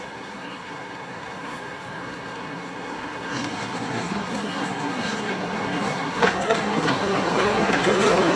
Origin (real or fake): fake